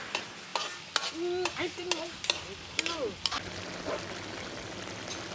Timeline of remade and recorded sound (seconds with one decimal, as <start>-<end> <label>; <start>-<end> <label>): 0.0-5.3 recorded

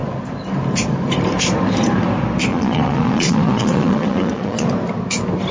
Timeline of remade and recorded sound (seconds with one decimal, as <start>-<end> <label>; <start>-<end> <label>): 0.0-2.5 recorded; 2.5-4.7 remade; 4.7-5.5 recorded

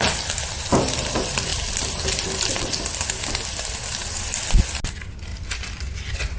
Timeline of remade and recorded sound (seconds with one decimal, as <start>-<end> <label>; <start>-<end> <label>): 0.0-1.5 recorded; 1.5-4.6 remade; 4.6-5.3 recorded; 5.3-5.9 remade; 5.9-6.4 recorded

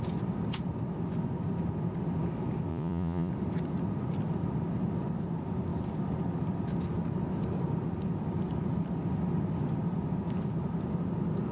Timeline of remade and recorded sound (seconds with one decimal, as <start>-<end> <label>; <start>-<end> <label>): 0.0-2.7 recorded; 2.7-3.3 remade; 3.3-11.5 recorded

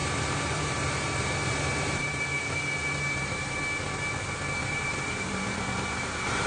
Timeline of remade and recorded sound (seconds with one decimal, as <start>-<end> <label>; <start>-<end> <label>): 0.0-3.6 remade; 3.6-4.6 recorded; 4.6-6.5 remade

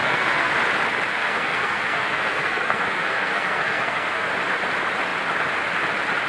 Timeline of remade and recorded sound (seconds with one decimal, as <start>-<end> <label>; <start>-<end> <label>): 0.0-0.5 remade; 0.5-1.1 recorded; 1.1-4.3 remade; 4.3-6.3 recorded

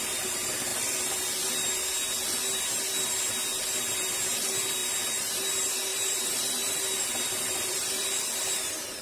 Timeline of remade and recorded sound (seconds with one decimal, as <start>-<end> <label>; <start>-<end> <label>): 0.0-4.8 recorded; 4.8-5.4 remade; 5.4-5.9 recorded; 5.9-8.2 remade; 8.2-9.0 recorded